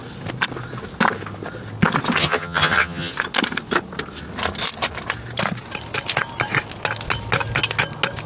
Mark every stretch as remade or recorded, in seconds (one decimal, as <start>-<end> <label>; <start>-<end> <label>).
0.0-2.2 recorded; 2.2-3.1 remade; 3.1-8.3 recorded